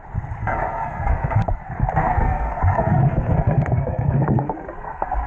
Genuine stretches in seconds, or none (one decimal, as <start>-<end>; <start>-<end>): 0.0-0.4; 1.7-2.1